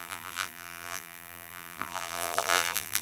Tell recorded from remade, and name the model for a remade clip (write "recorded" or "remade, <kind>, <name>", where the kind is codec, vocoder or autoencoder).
remade, vocoder, BigVGAN v2